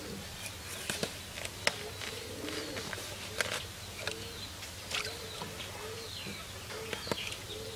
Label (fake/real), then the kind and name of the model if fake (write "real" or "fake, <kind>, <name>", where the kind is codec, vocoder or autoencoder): real